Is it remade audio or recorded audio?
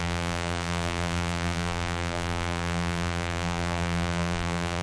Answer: remade